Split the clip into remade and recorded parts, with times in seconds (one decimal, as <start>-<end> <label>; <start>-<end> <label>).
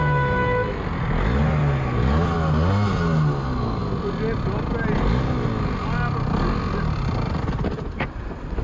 0.0-8.6 recorded